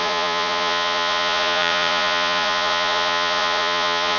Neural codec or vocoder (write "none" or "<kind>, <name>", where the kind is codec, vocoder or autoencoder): vocoder, Vocos